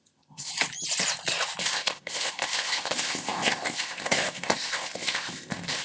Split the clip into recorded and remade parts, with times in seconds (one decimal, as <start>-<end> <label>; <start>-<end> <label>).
0.0-0.5 remade; 0.5-1.6 recorded; 1.6-5.8 remade